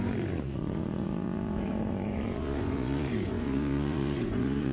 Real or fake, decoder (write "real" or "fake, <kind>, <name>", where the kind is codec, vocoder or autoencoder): fake, vocoder, Vocos